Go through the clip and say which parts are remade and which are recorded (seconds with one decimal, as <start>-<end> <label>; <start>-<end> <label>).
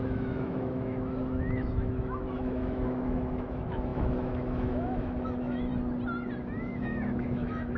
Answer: 0.0-5.7 remade; 5.7-6.6 recorded; 6.6-7.8 remade